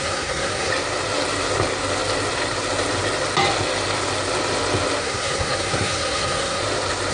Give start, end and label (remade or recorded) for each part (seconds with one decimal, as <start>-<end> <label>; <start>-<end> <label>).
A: 0.0-0.7 remade; 0.7-5.0 recorded; 5.0-6.6 remade; 6.6-7.1 recorded